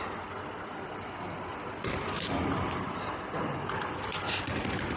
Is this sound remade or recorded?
recorded